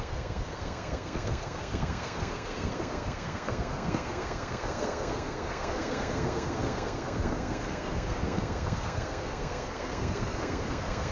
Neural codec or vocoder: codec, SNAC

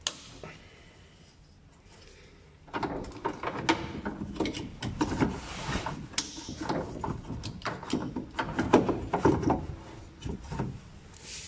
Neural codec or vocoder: none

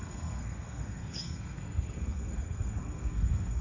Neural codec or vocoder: codec, SNAC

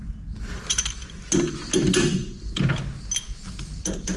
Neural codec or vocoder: none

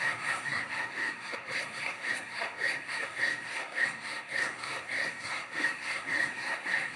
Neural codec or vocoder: codec, SNAC